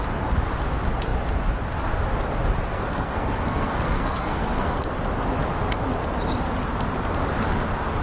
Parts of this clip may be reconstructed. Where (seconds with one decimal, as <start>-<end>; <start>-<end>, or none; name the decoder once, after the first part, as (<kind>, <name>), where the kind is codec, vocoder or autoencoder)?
2.7-4.9 (codec, SNAC)